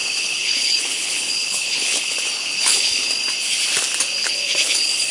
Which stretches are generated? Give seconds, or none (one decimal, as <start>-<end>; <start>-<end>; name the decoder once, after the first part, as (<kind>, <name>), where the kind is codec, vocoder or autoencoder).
0.0-3.1 (codec, HILCodec); 4.2-5.1